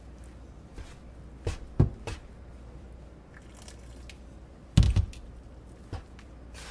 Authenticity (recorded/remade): recorded